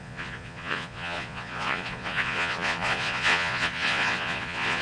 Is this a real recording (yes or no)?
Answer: no